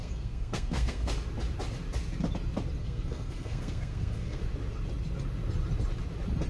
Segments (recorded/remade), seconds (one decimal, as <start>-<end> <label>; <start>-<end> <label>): 0.0-1.1 remade; 1.1-2.8 recorded; 2.8-4.4 remade; 4.4-6.5 recorded